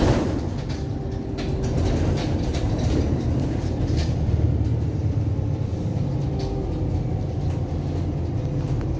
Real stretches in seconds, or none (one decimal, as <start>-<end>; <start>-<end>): 0.0-2.5; 5.2-9.0

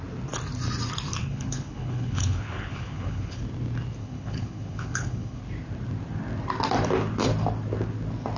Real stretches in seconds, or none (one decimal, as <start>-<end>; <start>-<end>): 0.0-1.2; 3.4-4.0; 5.4-8.4

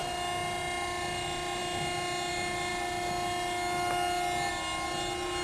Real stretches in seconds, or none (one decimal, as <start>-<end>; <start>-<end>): 0.0-5.4

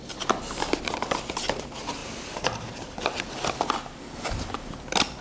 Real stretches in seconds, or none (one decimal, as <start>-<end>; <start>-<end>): 0.0-5.2

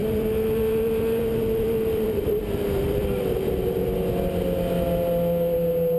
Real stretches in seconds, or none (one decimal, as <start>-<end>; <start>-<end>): 3.2-6.0

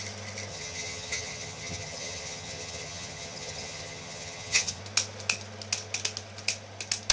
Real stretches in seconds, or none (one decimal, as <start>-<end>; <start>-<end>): 0.0-0.5; 4.8-7.1

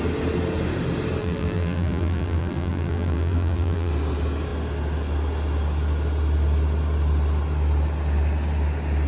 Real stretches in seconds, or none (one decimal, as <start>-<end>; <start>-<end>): 0.0-1.2; 3.9-9.1

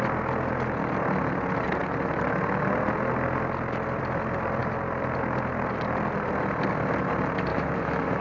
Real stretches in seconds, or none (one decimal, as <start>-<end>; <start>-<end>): 0.0-7.5